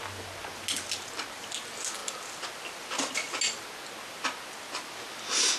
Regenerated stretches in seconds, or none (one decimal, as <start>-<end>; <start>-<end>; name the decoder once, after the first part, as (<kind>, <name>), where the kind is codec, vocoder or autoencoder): none